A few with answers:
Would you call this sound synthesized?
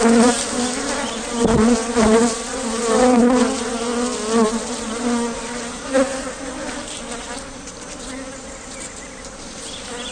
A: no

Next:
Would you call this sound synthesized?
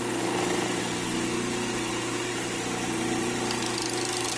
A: no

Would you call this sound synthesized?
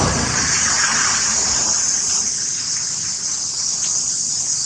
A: no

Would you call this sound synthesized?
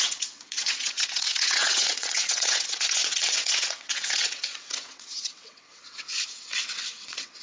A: yes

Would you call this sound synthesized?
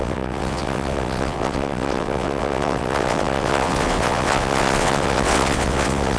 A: yes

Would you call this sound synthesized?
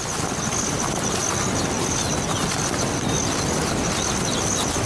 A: no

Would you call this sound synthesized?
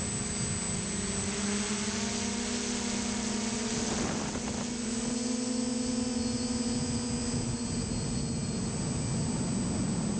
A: no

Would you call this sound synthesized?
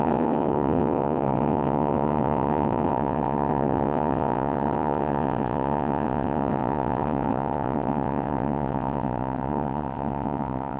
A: yes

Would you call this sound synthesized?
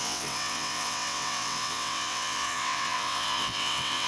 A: yes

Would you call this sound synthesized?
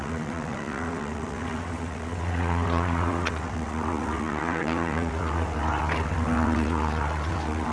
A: yes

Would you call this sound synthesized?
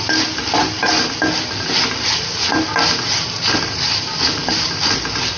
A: no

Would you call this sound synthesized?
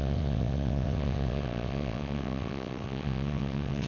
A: yes